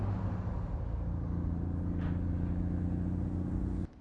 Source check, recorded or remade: recorded